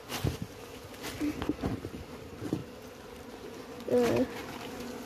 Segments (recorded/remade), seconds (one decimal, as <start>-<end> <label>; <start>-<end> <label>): 0.0-2.6 recorded; 2.6-3.3 remade; 3.3-5.1 recorded